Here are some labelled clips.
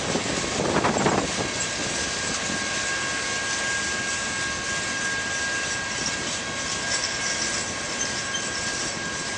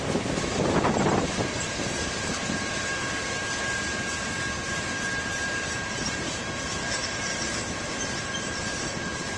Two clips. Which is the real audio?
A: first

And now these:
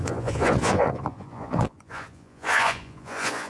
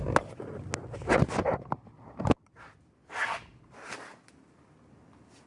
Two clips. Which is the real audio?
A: second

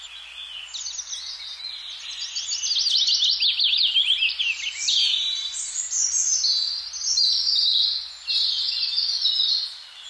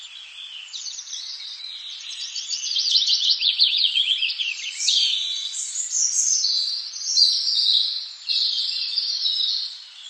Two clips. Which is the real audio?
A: first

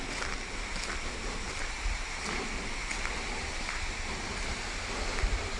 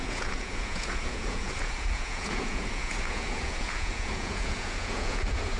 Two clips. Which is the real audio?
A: first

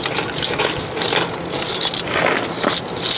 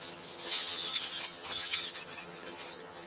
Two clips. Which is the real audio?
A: first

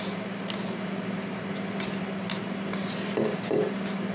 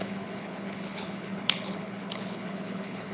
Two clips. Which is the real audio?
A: first